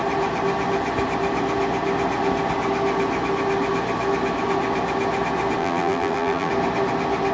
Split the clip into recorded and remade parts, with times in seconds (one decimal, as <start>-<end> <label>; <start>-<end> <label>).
0.0-5.6 recorded; 5.6-6.5 remade; 6.5-7.3 recorded